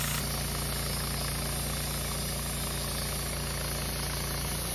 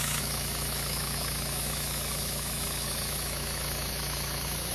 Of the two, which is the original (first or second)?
first